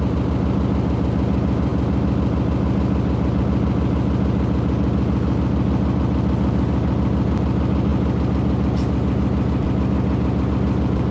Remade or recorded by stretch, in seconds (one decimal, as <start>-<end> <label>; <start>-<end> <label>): 0.0-11.1 recorded